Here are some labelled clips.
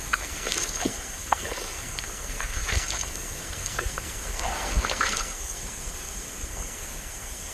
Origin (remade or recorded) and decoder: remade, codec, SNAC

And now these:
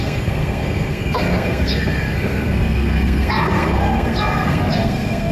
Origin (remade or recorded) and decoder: remade, codec, SNAC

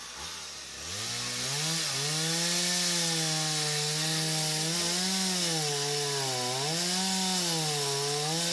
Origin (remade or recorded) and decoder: recorded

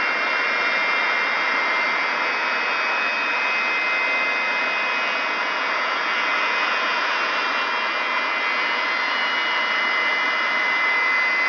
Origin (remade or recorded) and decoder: recorded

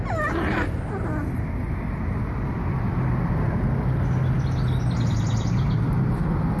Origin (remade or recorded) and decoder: recorded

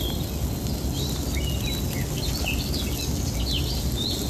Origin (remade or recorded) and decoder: recorded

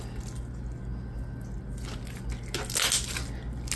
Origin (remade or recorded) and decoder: recorded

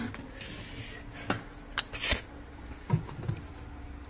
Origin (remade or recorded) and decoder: recorded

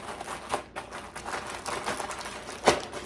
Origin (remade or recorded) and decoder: recorded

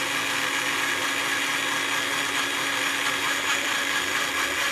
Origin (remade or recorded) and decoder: recorded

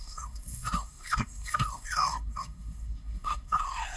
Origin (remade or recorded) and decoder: remade, codec, SNAC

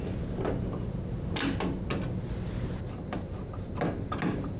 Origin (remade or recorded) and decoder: recorded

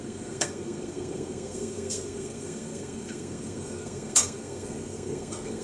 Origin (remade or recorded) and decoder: remade, codec, SNAC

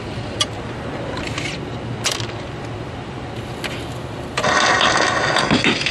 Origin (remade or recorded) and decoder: recorded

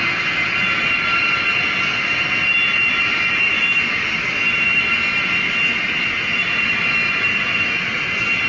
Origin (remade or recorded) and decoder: recorded